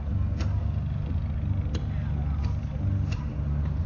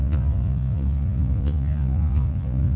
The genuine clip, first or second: first